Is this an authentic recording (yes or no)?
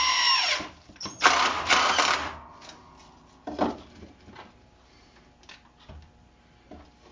yes